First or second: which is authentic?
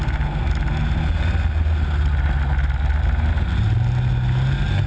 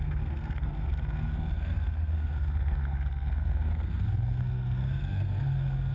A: first